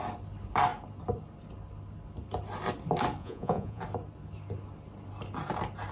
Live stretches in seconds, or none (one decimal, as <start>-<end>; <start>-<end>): 0.0-3.2; 3.8-5.9